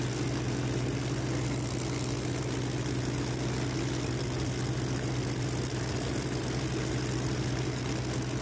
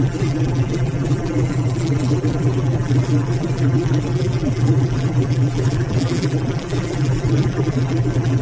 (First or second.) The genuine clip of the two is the first